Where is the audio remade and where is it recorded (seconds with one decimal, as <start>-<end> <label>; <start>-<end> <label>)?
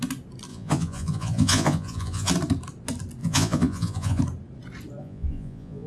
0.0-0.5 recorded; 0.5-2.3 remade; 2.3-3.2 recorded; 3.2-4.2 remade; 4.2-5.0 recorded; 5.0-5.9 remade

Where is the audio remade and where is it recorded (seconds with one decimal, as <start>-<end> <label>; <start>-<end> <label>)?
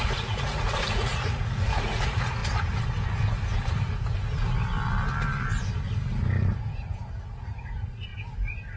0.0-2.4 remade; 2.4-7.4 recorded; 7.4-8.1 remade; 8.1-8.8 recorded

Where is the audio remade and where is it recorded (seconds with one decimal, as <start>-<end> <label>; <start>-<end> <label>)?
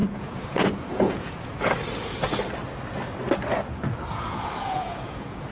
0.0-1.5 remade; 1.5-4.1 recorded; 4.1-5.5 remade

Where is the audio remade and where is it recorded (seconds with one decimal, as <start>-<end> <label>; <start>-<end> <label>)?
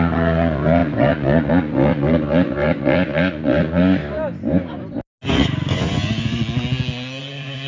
0.0-4.0 remade; 4.0-5.3 recorded; 5.3-6.4 remade; 6.4-7.2 recorded; 7.2-7.7 remade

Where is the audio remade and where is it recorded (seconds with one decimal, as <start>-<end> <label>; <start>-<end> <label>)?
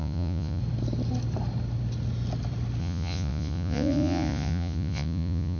0.0-0.6 remade; 0.6-2.8 recorded; 2.8-5.6 remade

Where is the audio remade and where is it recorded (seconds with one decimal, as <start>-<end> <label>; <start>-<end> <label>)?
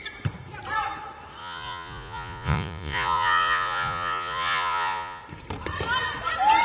0.0-1.4 recorded; 1.4-5.2 remade; 5.2-6.6 recorded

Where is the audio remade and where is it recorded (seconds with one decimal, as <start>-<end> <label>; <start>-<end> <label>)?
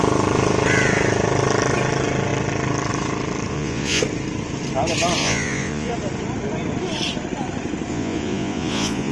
0.0-3.5 recorded; 3.5-4.0 remade; 4.0-5.2 recorded; 5.2-5.9 remade; 5.9-7.9 recorded; 7.9-9.1 remade